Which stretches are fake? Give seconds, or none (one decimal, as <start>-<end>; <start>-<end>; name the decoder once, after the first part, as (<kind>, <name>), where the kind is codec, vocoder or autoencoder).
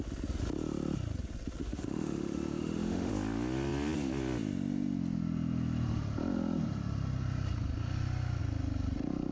1.6-3.1 (autoencoder, DAC-VAE)